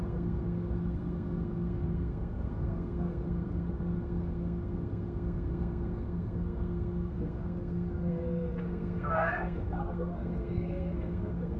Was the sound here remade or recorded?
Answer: remade